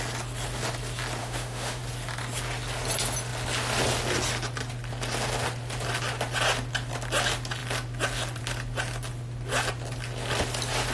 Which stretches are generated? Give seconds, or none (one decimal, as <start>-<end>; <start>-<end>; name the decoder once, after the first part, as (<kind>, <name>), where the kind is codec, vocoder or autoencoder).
1.2-1.8 (autoencoder, DAC-VAE)